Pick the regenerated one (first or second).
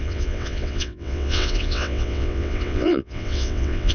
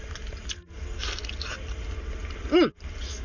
first